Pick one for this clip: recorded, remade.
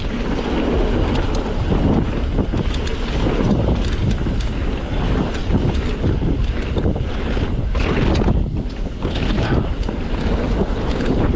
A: recorded